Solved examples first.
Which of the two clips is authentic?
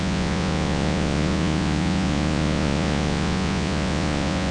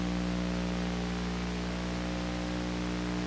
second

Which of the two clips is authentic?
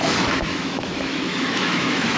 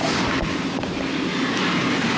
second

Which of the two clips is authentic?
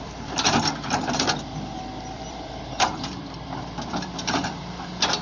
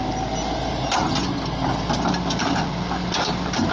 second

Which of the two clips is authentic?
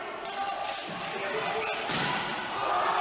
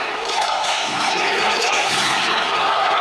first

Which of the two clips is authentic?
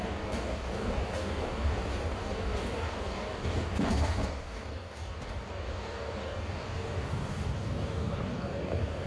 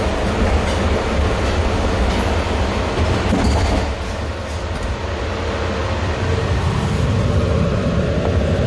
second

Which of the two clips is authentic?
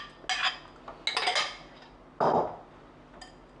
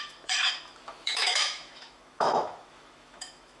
first